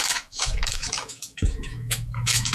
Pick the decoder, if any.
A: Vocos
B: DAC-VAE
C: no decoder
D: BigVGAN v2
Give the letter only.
B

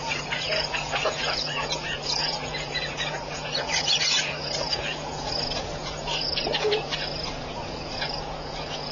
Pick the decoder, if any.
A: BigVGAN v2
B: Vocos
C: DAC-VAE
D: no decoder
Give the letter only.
B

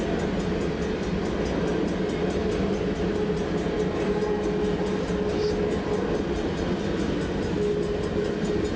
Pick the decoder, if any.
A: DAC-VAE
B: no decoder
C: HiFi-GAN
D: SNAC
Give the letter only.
B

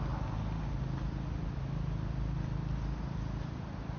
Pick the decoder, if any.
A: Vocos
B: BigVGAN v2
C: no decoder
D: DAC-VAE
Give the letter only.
C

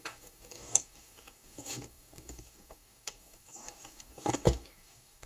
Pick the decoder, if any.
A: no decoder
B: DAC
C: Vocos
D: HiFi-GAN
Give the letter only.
B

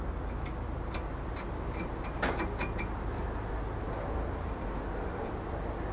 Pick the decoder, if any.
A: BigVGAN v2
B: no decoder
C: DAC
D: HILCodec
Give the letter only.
B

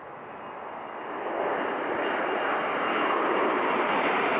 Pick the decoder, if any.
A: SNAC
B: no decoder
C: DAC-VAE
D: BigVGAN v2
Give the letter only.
B